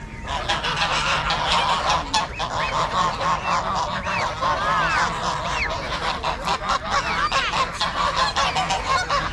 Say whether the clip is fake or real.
real